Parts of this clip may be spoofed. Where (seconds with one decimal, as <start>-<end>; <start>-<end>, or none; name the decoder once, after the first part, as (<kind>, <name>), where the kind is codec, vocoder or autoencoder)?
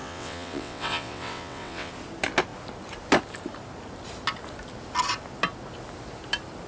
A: 0.0-1.9 (vocoder, WaveNeXt)